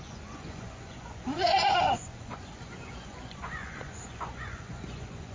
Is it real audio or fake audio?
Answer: fake